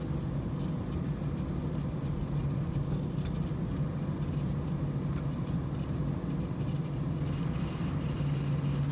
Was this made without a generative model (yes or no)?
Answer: yes